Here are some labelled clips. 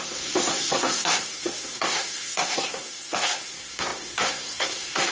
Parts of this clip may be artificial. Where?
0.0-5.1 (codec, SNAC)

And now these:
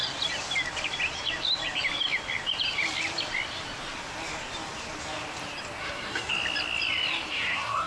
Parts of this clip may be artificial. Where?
5.8-6.3 (codec, SNAC); 7.3-7.9

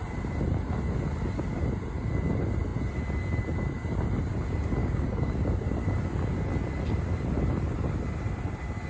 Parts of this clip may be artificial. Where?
4.8-5.3 (codec, DAC)

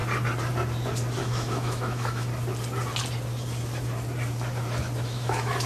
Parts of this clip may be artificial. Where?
1.2-2.3 (autoencoder, DAC-VAE); 5.0-5.7